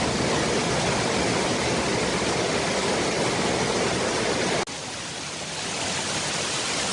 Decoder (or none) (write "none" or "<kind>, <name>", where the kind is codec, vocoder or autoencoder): none